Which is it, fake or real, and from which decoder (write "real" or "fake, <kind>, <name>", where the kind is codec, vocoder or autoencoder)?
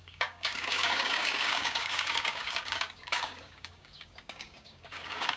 fake, codec, DAC